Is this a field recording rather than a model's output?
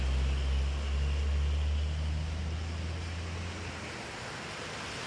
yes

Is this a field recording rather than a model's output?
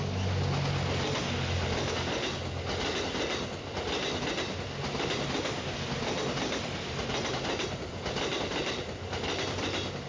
yes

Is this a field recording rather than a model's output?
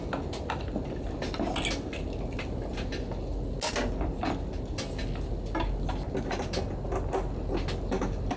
yes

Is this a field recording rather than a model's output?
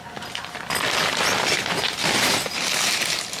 yes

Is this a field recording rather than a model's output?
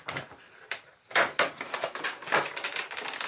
yes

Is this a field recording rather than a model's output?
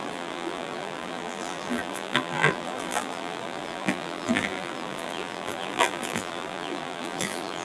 no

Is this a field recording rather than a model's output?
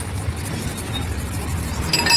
yes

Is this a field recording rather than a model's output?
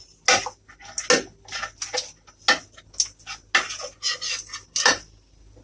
yes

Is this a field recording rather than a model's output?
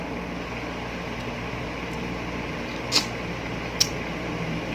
yes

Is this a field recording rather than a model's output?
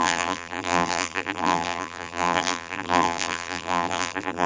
no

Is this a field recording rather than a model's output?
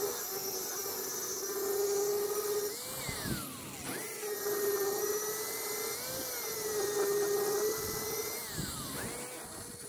yes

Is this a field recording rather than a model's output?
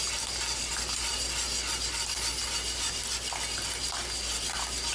yes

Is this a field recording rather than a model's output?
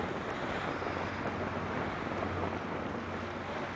yes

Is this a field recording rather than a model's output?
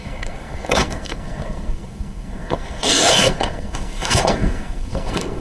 no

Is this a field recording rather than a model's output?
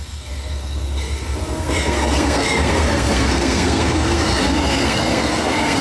no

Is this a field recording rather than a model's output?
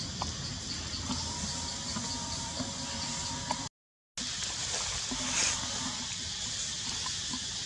yes